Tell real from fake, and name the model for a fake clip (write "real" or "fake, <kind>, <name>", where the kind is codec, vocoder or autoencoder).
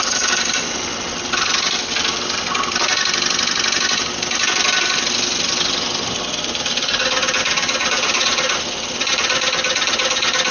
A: real